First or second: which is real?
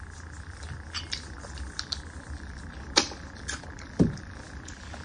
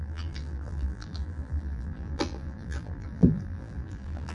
first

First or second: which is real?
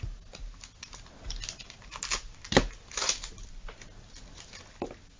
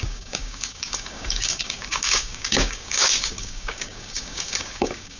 first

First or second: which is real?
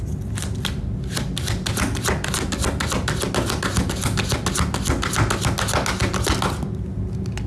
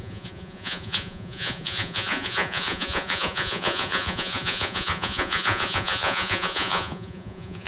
first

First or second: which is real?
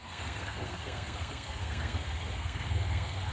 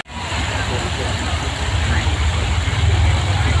second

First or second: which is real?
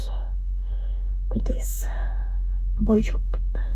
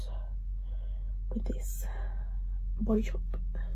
second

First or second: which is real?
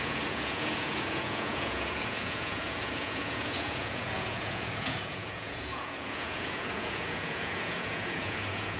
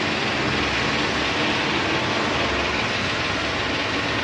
second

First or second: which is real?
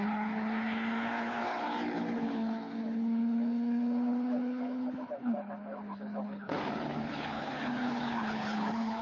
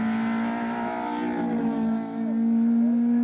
second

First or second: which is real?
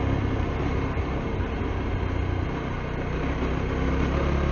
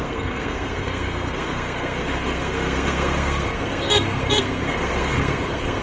first